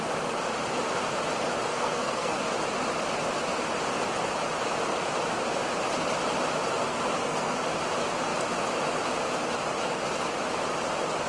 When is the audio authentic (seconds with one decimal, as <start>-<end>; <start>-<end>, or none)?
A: 0.0-1.7; 2.4-6.7; 7.6-11.3